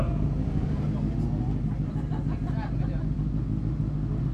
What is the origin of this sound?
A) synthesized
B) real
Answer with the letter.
B